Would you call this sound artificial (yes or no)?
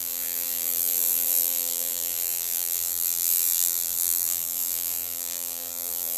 yes